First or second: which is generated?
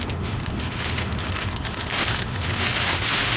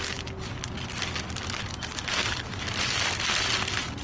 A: first